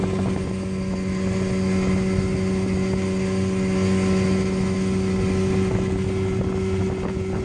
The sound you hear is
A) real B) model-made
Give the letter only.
A